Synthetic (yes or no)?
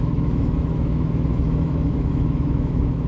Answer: yes